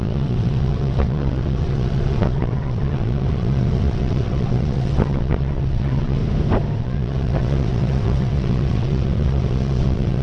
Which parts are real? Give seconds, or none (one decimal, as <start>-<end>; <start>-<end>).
6.2-6.8